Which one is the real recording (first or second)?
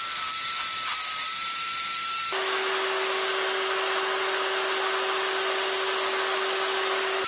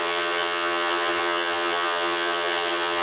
first